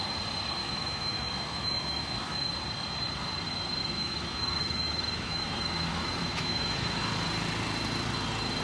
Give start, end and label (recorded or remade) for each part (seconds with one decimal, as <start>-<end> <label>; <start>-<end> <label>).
0.0-0.6 recorded; 0.6-2.5 remade; 2.5-3.8 recorded; 3.8-7.0 remade; 7.0-8.6 recorded